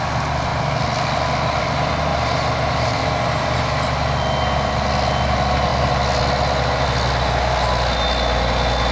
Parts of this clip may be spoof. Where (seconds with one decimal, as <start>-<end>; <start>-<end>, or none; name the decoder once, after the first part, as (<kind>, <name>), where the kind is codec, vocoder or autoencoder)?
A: 2.1-3.0 (vocoder, BigVGAN v2)